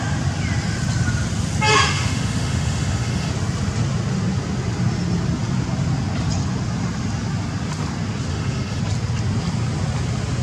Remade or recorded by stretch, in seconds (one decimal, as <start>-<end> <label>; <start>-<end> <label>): 0.0-1.7 recorded; 1.7-3.3 remade; 3.3-8.3 recorded; 8.3-8.8 remade; 8.8-10.4 recorded